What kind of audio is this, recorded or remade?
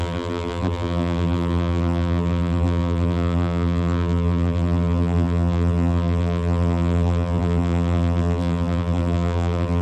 remade